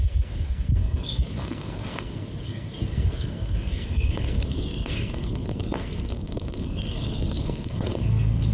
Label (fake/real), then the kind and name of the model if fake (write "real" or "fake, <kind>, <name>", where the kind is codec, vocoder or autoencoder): fake, codec, SNAC